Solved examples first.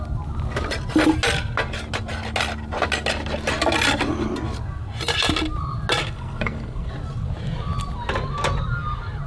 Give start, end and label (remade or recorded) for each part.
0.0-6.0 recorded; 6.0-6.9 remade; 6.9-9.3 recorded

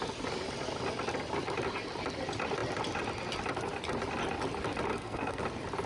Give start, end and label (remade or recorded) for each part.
0.0-4.9 recorded; 4.9-5.4 remade; 5.4-5.9 recorded

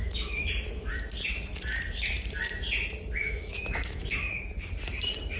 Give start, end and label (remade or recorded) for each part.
0.0-0.9 remade; 0.9-3.2 recorded; 3.2-4.7 remade; 4.7-5.4 recorded

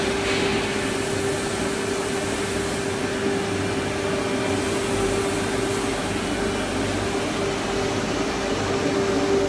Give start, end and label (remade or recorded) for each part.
0.0-9.5 recorded

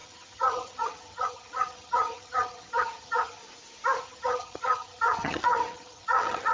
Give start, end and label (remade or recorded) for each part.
0.0-3.4 remade; 3.4-4.0 recorded; 4.0-6.5 remade

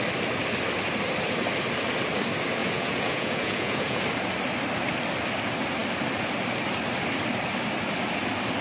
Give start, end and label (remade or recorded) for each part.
0.0-2.6 recorded; 2.6-4.0 remade; 4.0-8.6 recorded

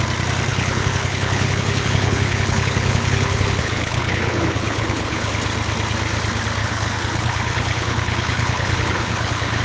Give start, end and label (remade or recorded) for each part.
0.0-0.5 recorded; 0.5-5.3 remade; 5.3-6.6 recorded; 6.6-9.6 remade